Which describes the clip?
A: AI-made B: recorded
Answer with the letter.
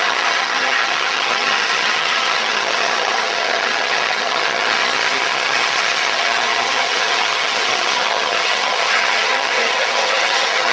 A